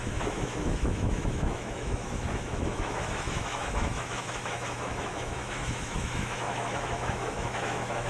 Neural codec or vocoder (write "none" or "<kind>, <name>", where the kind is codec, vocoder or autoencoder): autoencoder, DAC-VAE